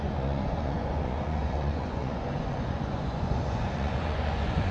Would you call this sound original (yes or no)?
no